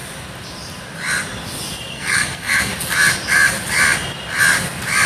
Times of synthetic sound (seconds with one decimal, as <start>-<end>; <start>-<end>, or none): 1.9-2.7